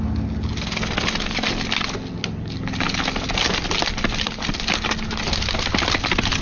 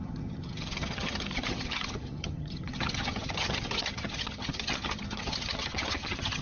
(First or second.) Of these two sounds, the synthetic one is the second